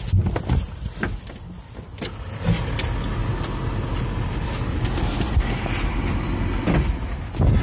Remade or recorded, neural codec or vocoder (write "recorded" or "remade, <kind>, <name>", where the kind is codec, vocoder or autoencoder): recorded